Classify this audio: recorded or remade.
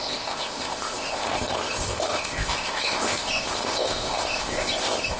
remade